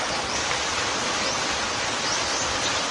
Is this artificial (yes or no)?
no